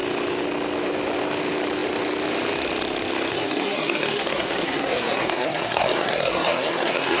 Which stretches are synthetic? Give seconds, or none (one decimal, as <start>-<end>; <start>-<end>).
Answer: 3.3-7.2